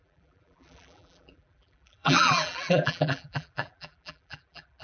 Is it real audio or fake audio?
fake